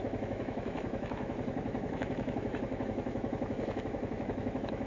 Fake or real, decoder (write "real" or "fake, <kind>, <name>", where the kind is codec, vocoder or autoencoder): fake, autoencoder, DAC-VAE